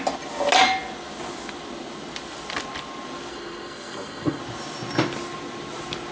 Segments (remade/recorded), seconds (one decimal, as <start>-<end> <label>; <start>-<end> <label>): 0.0-3.3 recorded; 3.3-4.4 remade; 4.4-6.1 recorded